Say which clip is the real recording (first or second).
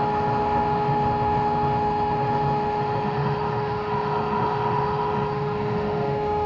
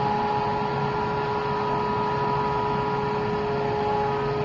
second